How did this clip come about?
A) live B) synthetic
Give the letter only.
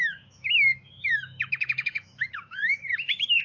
B